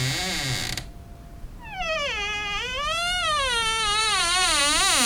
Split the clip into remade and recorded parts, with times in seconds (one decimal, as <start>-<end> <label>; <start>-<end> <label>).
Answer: 0.0-0.6 recorded; 0.6-1.1 remade; 1.1-4.0 recorded; 4.0-4.6 remade; 4.6-5.1 recorded